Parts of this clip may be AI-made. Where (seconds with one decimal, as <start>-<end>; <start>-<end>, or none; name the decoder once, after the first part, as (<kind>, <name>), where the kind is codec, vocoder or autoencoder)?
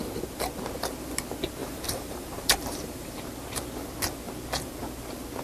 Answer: 1.6-3.2 (vocoder, BigVGAN v2)